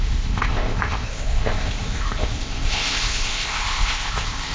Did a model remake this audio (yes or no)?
yes